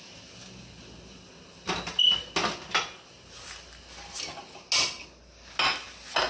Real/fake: real